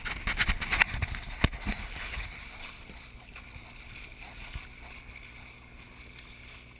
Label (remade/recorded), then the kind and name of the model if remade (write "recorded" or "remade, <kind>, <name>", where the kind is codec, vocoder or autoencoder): recorded